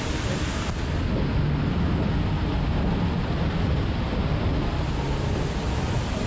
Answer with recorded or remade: recorded